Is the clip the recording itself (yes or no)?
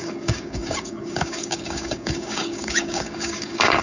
no